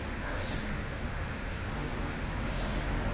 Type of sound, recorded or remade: remade